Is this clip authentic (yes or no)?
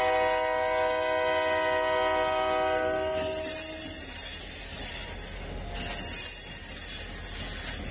yes